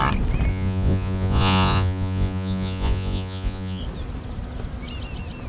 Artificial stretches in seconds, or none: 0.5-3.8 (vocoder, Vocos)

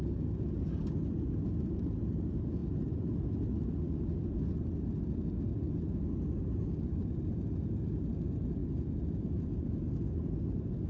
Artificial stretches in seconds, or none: none

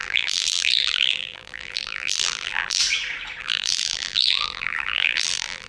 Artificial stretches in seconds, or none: 0.0-2.8 (vocoder, BigVGAN v2); 3.4-5.7

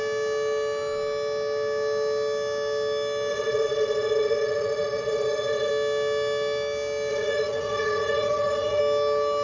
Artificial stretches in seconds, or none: 3.3-5.7 (vocoder, Vocos); 7.1-8.8

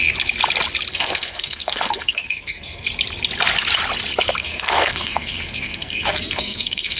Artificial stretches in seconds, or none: 0.9-2.9 (codec, SNAC); 4.4-7.0

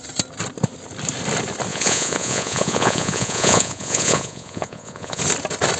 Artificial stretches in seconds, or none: 1.7-5.2 (vocoder, Vocos)